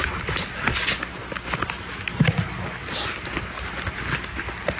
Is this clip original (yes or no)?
yes